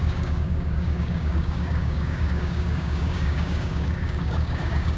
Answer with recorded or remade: remade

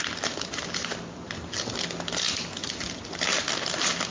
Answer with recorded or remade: recorded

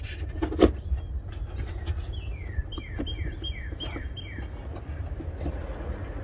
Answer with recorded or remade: recorded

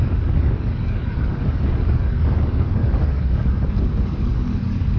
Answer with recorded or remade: remade